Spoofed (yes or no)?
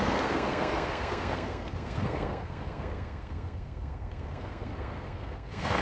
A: yes